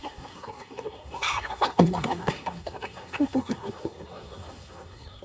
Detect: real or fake fake